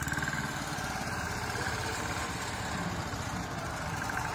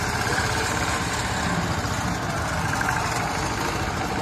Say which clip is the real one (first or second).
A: second